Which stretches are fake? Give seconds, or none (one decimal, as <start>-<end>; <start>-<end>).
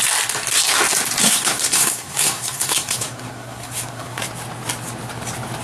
1.2-4.2